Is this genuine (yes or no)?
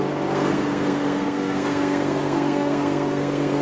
no